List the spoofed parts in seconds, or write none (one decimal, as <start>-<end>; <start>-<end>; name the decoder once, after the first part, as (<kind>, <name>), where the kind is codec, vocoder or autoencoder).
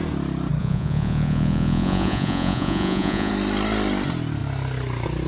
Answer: 0.6-3.3 (vocoder, Vocos)